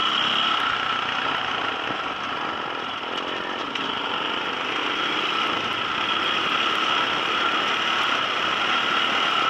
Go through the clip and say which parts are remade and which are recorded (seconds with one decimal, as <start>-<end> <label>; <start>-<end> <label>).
0.0-9.5 recorded